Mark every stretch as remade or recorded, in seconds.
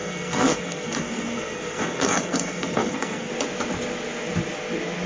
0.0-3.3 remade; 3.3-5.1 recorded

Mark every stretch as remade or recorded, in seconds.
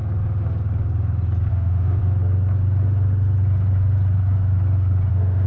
0.0-1.5 recorded; 1.5-2.0 remade; 2.0-5.1 recorded; 5.1-5.5 remade